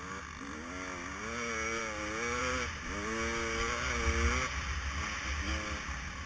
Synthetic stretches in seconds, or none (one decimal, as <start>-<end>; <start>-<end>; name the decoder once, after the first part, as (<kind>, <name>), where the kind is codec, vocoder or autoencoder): none